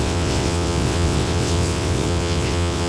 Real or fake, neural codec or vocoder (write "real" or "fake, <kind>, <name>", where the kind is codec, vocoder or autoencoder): fake, vocoder, WaveNeXt